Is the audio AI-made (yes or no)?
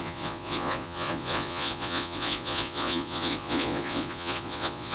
yes